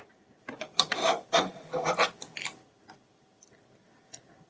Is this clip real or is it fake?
real